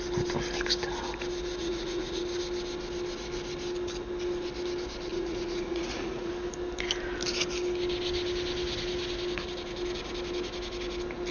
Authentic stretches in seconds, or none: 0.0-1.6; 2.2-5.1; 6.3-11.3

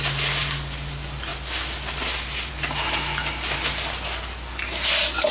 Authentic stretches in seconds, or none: 0.0-5.3

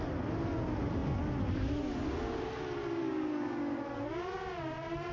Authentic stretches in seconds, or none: 0.0-3.0; 4.3-5.1

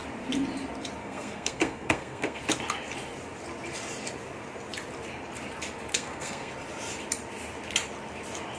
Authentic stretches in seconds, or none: 0.0-1.0; 2.4-5.9; 6.5-8.6

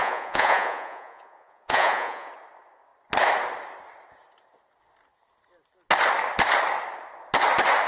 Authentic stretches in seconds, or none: 2.3-7.9

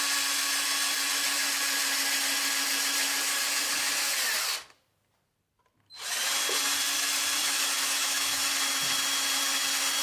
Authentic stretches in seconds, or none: 0.0-7.4; 8.4-10.0

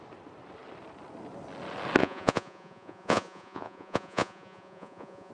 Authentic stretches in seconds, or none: 0.0-2.0

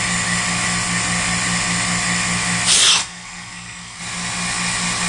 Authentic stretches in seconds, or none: 0.0-3.0; 4.0-5.1